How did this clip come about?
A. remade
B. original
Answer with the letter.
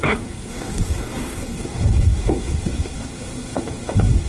A